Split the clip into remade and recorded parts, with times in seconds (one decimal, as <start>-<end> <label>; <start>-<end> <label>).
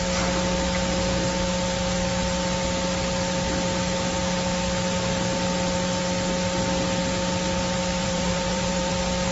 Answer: 0.0-8.0 recorded; 8.0-8.9 remade; 8.9-9.3 recorded